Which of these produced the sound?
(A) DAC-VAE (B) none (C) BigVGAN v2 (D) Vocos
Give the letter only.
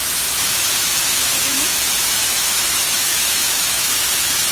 A